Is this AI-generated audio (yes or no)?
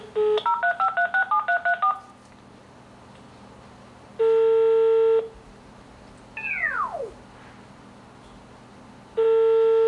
no